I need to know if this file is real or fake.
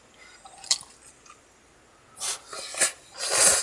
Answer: real